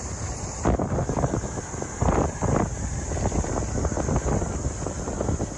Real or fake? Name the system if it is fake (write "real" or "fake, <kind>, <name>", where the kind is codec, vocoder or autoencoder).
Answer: real